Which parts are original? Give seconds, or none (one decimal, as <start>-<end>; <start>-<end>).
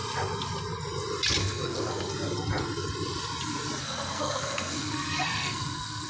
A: 0.0-1.4; 2.1-3.8